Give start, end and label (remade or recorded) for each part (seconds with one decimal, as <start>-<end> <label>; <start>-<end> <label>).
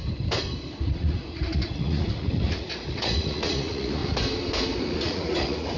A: 0.0-0.8 recorded; 0.8-4.0 remade; 4.0-4.8 recorded; 4.8-5.8 remade